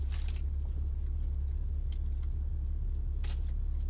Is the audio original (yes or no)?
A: yes